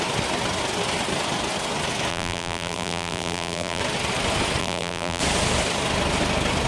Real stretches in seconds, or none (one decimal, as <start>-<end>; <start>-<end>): 0.0-2.1; 3.8-4.6; 5.2-6.7